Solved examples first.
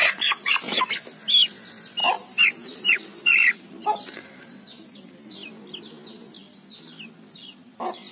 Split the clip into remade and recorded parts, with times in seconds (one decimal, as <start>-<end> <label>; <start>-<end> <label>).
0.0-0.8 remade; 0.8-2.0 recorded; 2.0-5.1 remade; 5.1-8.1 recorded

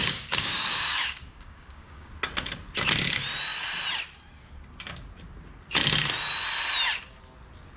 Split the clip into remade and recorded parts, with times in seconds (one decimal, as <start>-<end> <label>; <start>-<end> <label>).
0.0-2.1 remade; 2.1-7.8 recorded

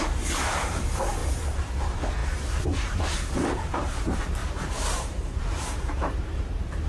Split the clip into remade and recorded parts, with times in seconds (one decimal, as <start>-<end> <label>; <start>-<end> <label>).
0.0-6.9 remade